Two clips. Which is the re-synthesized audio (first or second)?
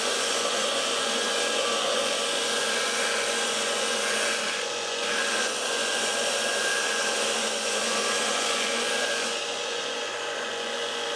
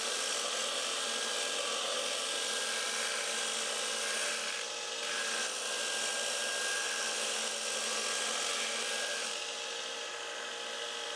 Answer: first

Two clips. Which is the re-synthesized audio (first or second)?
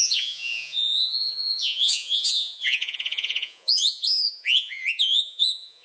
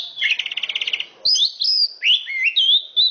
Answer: first